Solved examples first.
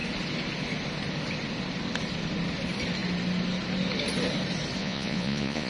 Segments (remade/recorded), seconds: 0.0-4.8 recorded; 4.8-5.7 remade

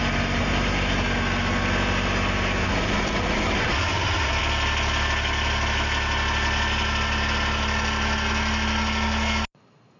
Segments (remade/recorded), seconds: 0.0-10.0 recorded

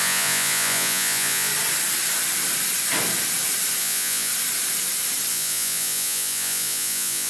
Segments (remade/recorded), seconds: 0.0-1.5 remade; 1.5-3.8 recorded; 3.8-4.3 remade; 4.3-5.3 recorded; 5.3-7.3 remade

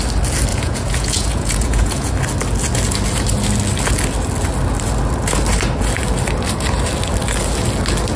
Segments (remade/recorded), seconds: 0.0-0.5 recorded; 0.5-2.1 remade; 2.1-8.2 recorded

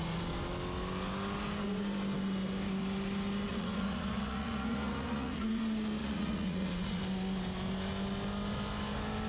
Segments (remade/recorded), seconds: 0.0-3.5 recorded; 3.5-5.6 remade; 5.6-6.0 recorded; 6.0-7.0 remade; 7.0-9.3 recorded